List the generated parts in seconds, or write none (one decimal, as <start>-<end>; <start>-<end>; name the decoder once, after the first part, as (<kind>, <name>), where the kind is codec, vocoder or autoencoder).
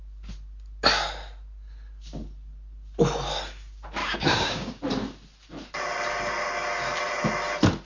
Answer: 4.0-4.8 (codec, DAC)